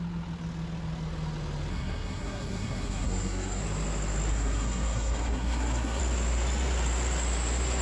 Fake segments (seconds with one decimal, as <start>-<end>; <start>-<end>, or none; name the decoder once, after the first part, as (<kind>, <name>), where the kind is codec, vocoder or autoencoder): 1.7-3.6 (codec, SNAC); 4.3-6.0

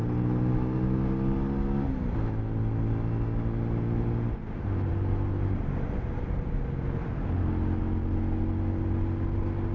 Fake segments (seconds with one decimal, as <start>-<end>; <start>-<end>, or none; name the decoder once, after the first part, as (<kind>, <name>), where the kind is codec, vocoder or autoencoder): none

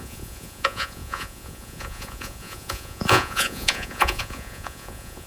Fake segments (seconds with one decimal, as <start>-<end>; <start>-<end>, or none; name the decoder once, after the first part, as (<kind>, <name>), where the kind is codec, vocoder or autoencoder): 0.0-5.3 (vocoder, Vocos)

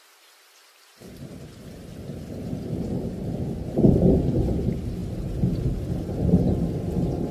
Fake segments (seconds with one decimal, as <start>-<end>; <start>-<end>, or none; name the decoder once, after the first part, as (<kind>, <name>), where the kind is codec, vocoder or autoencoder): none

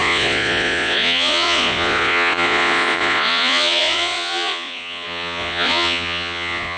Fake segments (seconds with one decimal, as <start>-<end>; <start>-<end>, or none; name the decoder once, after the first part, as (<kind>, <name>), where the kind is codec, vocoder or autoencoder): 0.0-6.8 (vocoder, Vocos)

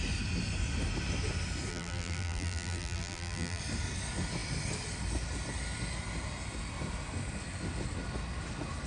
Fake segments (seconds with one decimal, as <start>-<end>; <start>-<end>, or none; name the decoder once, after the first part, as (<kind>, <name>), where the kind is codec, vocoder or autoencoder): 1.7-3.6 (vocoder, BigVGAN v2)

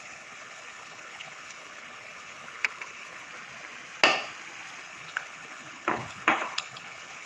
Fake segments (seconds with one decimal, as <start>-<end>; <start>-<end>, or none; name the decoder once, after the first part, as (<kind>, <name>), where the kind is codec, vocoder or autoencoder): 0.0-3.3 (codec, HILCodec); 4.8-7.3